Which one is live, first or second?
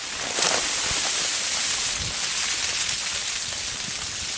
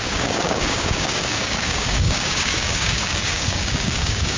first